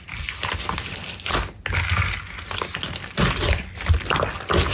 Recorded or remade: recorded